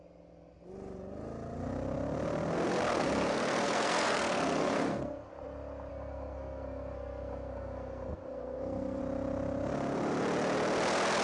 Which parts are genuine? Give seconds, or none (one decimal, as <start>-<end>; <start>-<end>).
0.0-2.9; 5.3-5.9; 9.0-11.2